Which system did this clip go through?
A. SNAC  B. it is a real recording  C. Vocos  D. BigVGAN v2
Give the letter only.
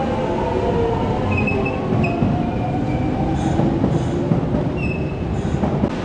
B